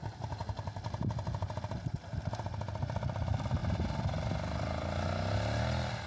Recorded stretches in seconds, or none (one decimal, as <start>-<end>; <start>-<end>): 0.0-6.1